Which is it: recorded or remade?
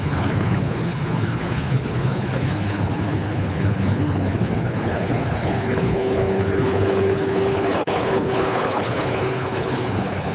remade